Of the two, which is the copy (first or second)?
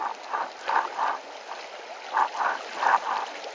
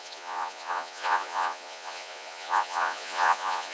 second